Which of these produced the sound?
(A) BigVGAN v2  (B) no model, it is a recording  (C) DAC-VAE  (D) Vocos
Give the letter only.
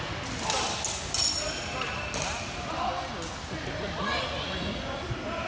B